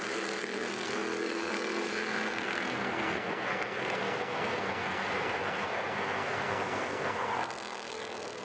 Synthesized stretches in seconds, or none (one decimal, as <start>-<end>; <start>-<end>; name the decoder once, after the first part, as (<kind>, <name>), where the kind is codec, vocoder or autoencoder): 0.0-8.4 (codec, SNAC)